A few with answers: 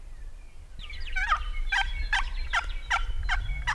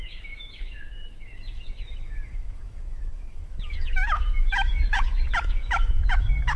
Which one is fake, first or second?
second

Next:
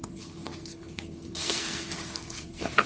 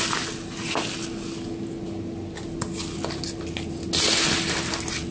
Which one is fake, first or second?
first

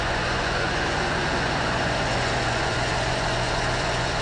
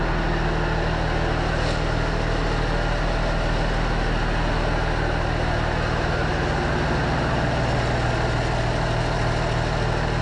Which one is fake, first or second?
first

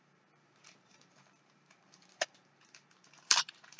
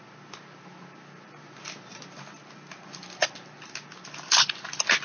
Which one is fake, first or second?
first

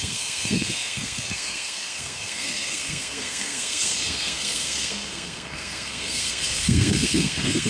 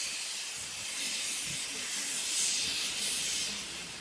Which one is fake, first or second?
first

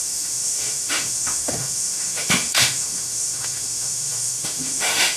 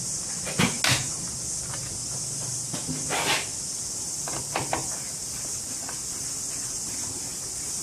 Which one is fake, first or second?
first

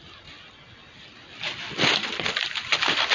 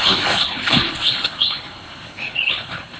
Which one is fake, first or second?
second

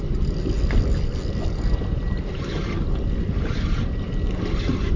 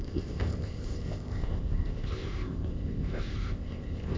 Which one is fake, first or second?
second